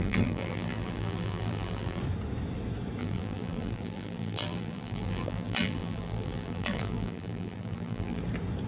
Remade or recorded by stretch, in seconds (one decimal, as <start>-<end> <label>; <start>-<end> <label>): 0.0-2.0 remade; 2.0-3.0 recorded; 3.0-8.2 remade; 8.2-8.7 recorded